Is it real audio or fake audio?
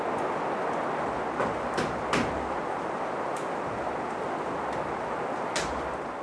real